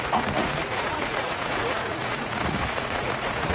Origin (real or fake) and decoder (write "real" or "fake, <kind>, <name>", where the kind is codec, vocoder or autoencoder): fake, vocoder, Vocos